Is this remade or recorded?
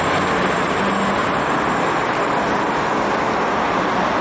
recorded